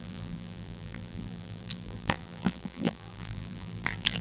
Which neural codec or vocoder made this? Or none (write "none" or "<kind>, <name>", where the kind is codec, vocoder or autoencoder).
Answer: vocoder, BigVGAN v2